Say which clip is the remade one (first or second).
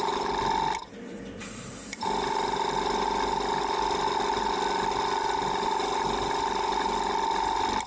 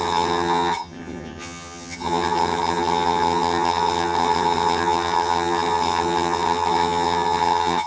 second